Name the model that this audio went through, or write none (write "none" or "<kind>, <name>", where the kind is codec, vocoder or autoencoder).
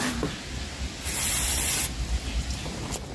none